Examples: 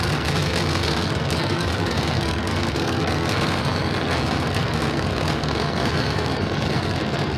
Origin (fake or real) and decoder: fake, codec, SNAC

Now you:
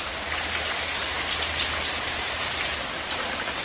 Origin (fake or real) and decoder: real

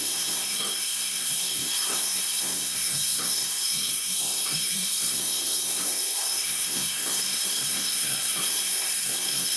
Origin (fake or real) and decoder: fake, codec, SNAC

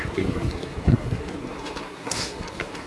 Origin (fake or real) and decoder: fake, codec, SNAC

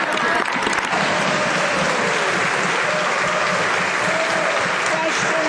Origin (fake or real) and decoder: real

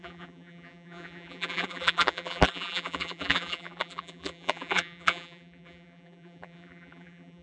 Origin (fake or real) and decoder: fake, vocoder, BigVGAN v2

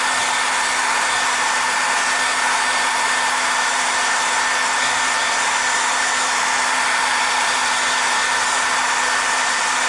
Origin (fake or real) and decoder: real